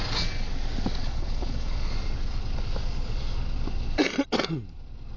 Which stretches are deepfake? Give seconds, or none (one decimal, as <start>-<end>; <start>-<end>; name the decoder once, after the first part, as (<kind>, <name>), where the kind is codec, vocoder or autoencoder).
1.0-1.9 (codec, HILCodec)